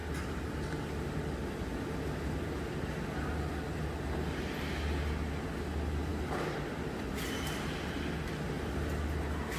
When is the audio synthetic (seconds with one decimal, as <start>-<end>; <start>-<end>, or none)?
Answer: none